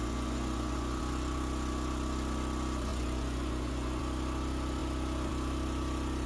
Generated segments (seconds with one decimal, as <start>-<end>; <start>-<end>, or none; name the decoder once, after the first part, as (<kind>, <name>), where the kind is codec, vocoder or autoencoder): 0.0-1.0 (vocoder, Vocos); 2.9-4.0